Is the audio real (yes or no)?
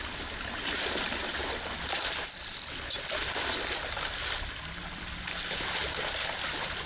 yes